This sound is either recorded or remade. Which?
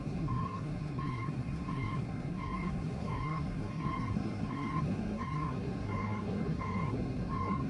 remade